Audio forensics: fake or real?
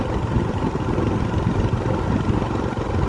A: real